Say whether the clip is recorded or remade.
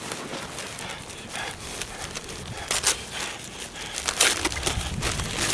recorded